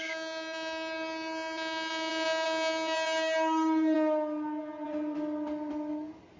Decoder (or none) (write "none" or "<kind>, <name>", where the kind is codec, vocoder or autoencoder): none